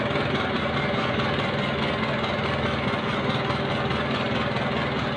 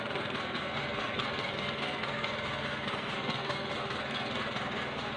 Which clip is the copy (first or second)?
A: second